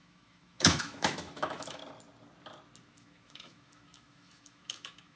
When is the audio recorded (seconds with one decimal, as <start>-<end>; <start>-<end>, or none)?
1.8-2.8